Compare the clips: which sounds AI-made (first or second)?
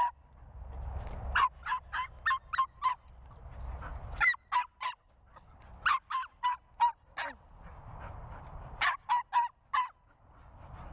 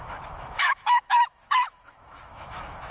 second